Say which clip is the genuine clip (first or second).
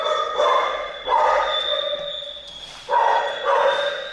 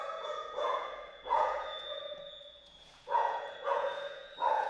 first